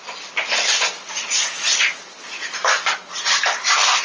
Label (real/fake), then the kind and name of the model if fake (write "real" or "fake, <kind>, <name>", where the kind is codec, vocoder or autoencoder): real